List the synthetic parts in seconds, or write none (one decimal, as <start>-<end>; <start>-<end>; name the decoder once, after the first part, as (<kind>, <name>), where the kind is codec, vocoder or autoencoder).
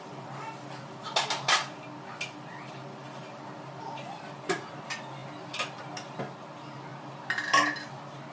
none